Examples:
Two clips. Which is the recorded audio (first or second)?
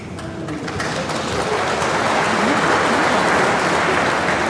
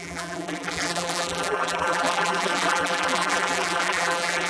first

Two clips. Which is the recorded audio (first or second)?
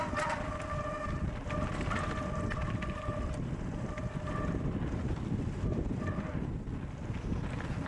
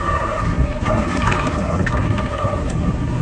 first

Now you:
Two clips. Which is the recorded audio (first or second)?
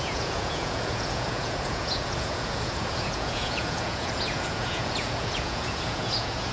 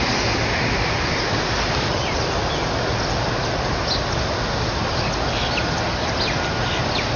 second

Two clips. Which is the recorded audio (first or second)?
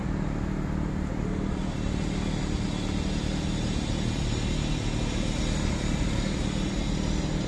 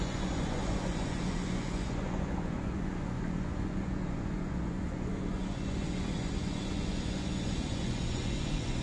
first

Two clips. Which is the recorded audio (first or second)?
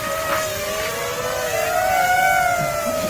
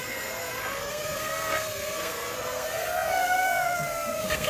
first